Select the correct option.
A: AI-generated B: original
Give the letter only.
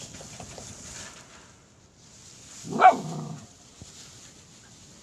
B